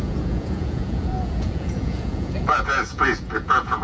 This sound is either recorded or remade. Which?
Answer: remade